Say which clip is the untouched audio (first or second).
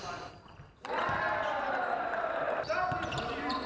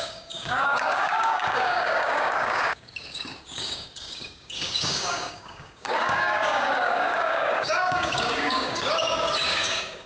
first